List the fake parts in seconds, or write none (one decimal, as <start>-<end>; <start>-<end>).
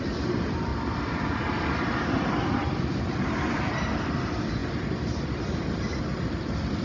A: none